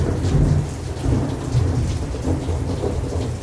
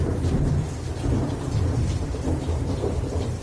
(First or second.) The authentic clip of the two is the first